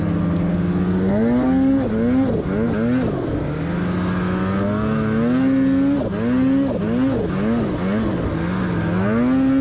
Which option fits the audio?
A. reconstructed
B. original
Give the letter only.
B